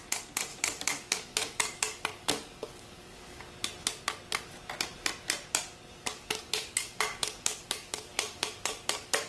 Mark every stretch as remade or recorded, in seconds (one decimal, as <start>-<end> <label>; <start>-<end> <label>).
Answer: 0.0-0.5 recorded; 0.5-3.5 remade; 3.5-6.1 recorded; 6.1-9.3 remade